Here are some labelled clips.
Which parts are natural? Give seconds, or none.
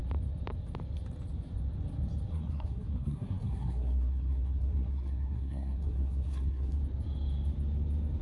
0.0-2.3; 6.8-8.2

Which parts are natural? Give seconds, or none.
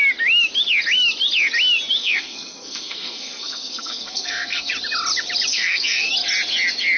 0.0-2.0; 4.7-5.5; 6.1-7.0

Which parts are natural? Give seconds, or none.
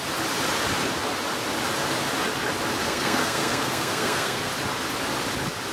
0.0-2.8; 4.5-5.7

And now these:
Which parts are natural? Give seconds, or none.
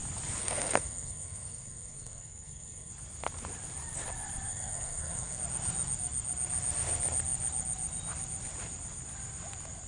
0.0-0.4; 2.9-4.5; 5.4-9.9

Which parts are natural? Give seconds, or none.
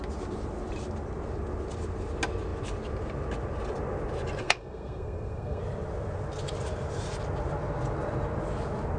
0.0-4.4; 5.6-9.0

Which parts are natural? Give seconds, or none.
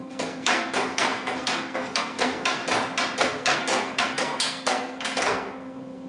2.6-3.2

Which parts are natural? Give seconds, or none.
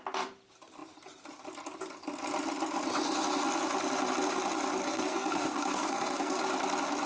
0.0-4.8; 6.4-7.1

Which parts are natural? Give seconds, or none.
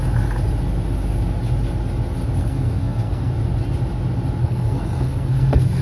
0.0-2.4; 3.3-4.4